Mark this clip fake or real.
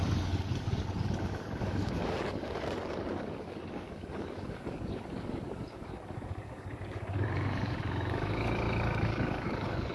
fake